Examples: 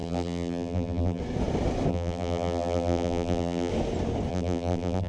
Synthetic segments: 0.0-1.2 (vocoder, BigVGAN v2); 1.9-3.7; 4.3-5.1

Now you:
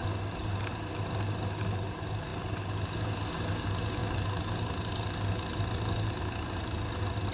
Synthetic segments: none

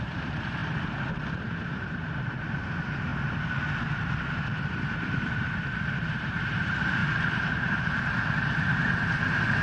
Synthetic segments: 0.0-3.1 (vocoder, BigVGAN v2); 4.3-9.6